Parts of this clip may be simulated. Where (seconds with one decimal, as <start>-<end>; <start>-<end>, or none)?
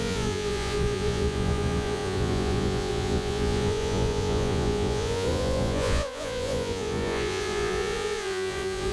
0.0-8.9